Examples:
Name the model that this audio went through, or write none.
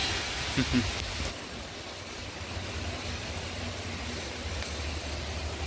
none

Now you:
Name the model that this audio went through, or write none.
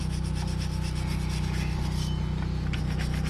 none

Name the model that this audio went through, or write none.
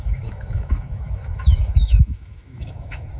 autoencoder, DAC-VAE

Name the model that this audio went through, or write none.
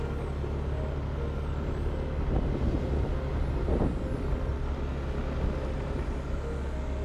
none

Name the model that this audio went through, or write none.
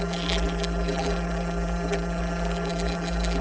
vocoder, BigVGAN v2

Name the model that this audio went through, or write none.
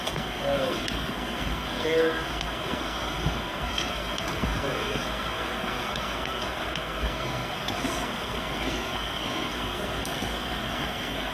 codec, SNAC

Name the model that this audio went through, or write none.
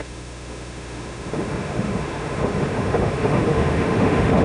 autoencoder, DAC-VAE